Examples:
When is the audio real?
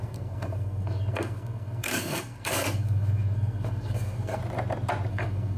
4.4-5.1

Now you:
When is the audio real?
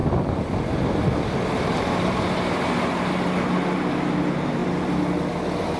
0.0-5.8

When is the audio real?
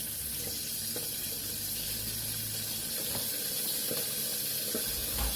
0.0-5.4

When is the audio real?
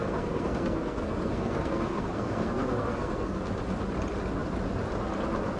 3.4-5.6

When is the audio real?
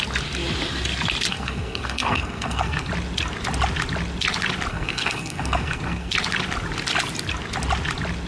0.0-1.3; 2.9-4.7; 6.1-8.3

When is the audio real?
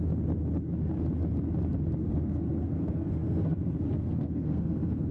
0.0-2.0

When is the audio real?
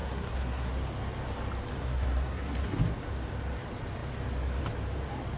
0.7-1.7; 2.8-5.4